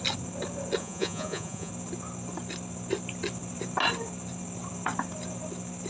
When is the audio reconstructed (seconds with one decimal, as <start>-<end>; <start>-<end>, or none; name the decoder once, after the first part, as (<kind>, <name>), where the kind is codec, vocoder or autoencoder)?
0.8-1.7 (vocoder, Vocos)